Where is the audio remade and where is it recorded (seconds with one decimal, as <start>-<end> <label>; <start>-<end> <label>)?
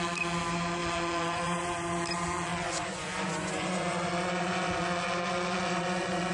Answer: 0.0-0.8 recorded; 0.8-1.6 remade; 1.6-2.5 recorded; 2.5-6.3 remade